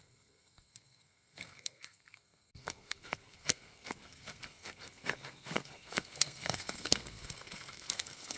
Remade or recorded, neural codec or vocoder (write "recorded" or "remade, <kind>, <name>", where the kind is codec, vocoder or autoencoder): remade, codec, SNAC